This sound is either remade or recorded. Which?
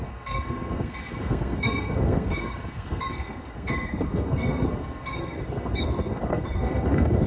remade